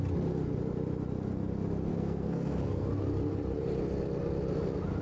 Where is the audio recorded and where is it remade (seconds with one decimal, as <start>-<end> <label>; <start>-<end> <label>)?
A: 0.0-1.9 recorded; 1.9-2.9 remade; 2.9-5.0 recorded